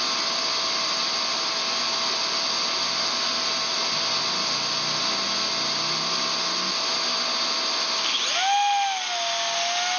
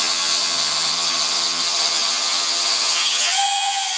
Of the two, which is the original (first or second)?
first